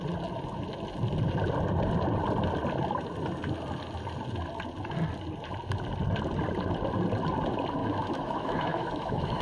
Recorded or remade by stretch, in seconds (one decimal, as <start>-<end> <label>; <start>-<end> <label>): 0.0-7.8 recorded; 7.8-9.4 remade